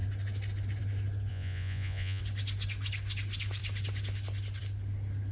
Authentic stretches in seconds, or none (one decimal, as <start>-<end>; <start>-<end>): 0.0-1.3; 2.2-5.3